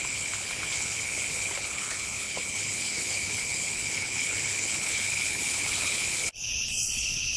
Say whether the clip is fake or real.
fake